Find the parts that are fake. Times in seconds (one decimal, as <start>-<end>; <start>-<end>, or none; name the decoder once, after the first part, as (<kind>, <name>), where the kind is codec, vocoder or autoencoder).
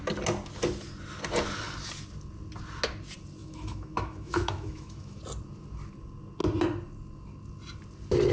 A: 3.4-5.2 (autoencoder, DAC-VAE)